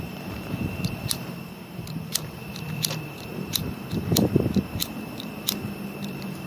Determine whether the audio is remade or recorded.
remade